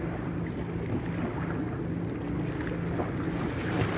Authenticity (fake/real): real